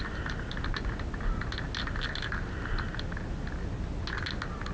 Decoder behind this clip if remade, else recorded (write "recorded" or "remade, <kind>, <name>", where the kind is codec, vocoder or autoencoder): recorded